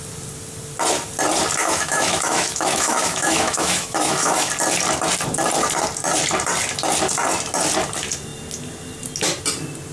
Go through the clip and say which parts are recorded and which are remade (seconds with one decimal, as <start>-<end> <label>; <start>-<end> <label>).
0.0-1.6 recorded; 1.6-4.5 remade; 4.5-9.9 recorded